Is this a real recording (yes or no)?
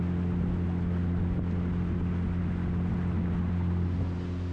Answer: yes